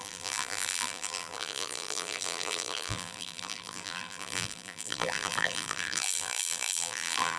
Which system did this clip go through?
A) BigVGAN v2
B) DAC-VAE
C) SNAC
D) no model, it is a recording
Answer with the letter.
A